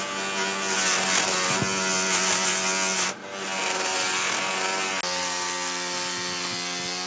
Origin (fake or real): real